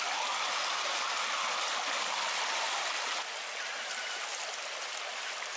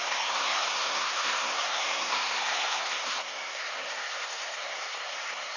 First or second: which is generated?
second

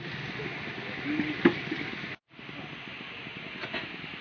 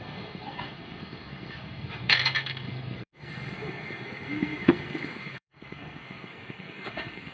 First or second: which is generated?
second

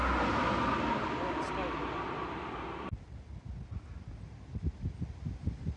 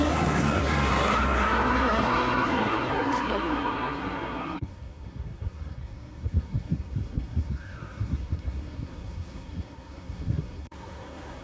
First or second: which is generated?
second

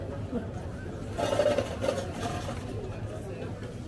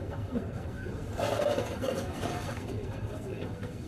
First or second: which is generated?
second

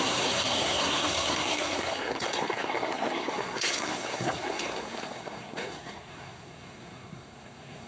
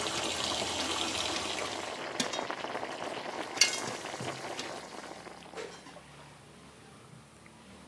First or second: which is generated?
first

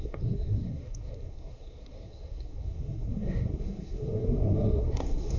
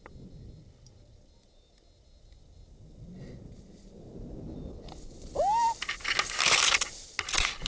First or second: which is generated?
first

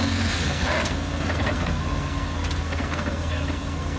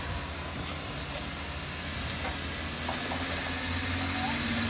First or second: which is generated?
first